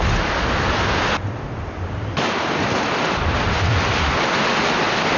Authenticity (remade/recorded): recorded